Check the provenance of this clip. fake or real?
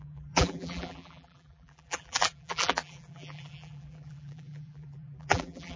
fake